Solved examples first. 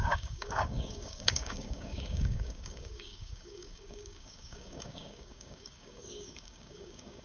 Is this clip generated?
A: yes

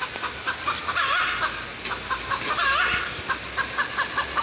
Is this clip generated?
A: no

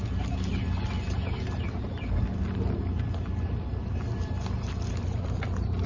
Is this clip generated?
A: no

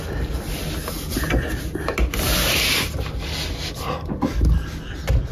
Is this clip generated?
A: no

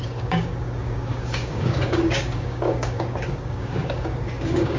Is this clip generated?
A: yes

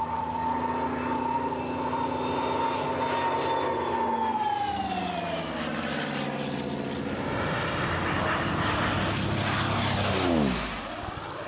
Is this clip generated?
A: no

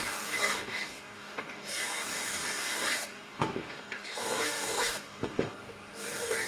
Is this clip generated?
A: yes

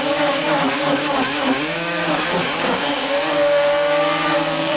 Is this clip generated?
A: yes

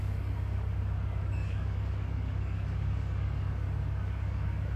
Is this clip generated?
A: yes